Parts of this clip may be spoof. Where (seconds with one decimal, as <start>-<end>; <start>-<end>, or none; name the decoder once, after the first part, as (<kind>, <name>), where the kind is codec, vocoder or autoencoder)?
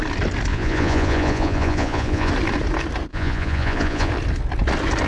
0.5-2.3 (vocoder, Vocos); 3.1-4.1